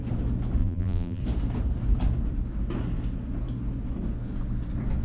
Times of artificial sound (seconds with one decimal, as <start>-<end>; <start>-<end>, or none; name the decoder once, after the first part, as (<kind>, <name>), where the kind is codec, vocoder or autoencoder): 0.6-1.2 (vocoder, BigVGAN v2)